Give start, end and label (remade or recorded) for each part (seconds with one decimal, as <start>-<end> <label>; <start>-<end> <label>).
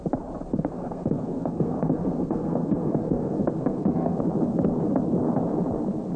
0.0-0.5 recorded; 0.5-4.2 remade; 4.2-6.2 recorded